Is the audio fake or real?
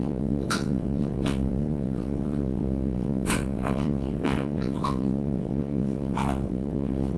fake